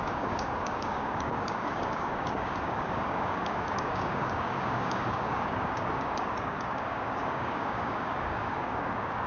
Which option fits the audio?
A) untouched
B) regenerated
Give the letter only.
B